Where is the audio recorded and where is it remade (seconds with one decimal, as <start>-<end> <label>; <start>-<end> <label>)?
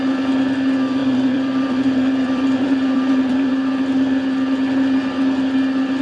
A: 0.0-1.0 recorded; 1.0-3.5 remade; 3.5-6.0 recorded